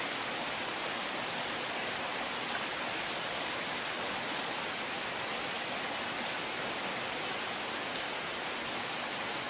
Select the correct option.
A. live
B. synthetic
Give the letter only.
A